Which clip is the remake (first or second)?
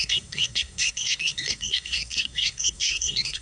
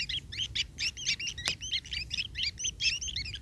first